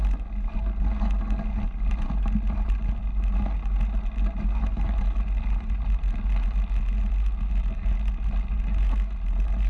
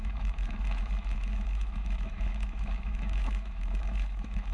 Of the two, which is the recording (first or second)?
first